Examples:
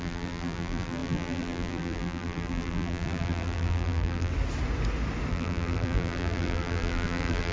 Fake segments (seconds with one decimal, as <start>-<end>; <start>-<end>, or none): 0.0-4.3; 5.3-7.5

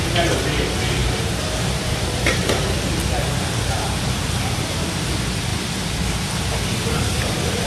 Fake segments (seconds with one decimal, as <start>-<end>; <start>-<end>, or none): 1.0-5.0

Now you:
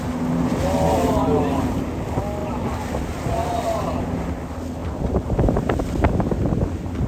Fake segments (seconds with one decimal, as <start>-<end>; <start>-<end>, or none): 4.8-5.8

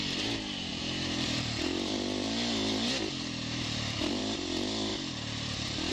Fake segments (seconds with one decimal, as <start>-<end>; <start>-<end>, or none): 0.7-4.2; 4.9-5.9

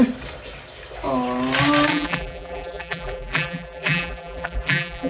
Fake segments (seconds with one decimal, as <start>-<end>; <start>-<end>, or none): 1.9-5.1

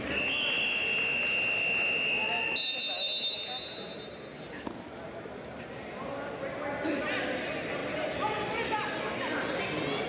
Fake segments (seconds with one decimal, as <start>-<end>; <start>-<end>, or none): none

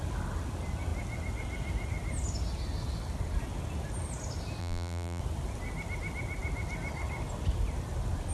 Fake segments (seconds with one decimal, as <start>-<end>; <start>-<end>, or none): 4.6-5.2